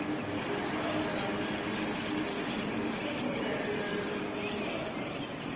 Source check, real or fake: real